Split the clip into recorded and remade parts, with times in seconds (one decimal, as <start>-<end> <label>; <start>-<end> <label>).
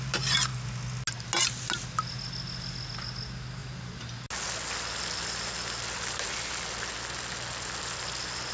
0.0-8.5 recorded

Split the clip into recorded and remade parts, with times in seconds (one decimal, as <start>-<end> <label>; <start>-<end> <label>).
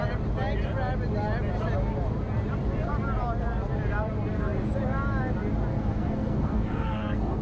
0.0-5.7 recorded; 5.7-7.4 remade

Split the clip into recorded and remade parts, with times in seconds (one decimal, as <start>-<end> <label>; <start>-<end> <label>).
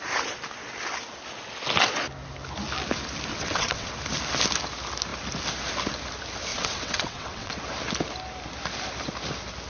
0.0-3.3 recorded; 3.3-3.9 remade; 3.9-6.5 recorded; 6.5-7.5 remade; 7.5-9.7 recorded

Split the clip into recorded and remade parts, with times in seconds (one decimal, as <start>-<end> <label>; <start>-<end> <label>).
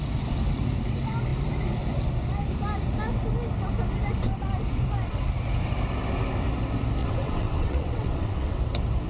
0.0-7.0 recorded; 7.0-8.6 remade; 8.6-9.1 recorded